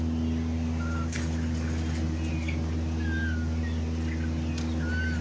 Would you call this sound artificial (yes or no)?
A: no